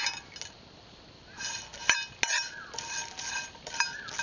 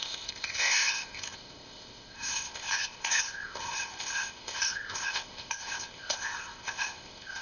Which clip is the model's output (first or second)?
second